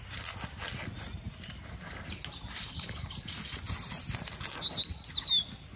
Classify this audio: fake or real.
real